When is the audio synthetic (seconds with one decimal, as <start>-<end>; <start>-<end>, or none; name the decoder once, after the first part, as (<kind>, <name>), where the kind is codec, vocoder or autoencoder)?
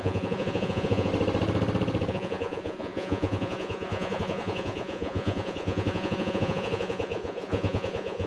0.0-1.1 (vocoder, Vocos); 2.1-8.3